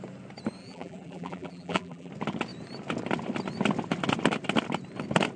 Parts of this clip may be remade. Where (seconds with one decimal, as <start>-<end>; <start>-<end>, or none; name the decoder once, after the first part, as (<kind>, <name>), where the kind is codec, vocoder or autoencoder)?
0.6-2.1 (vocoder, BigVGAN v2)